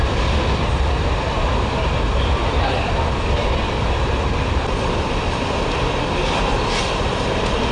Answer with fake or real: fake